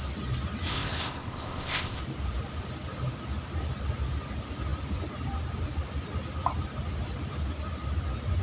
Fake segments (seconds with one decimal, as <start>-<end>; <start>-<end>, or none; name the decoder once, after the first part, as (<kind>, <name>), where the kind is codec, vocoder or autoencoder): 0.7-2.0 (codec, ZipCodec)